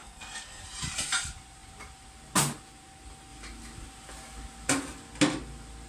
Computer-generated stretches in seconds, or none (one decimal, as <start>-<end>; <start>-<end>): 0.0-0.6